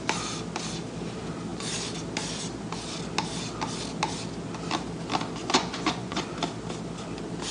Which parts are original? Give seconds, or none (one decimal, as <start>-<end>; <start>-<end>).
0.0-5.4; 6.2-7.5